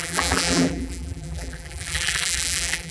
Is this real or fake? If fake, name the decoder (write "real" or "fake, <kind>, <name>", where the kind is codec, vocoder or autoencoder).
fake, vocoder, BigVGAN v2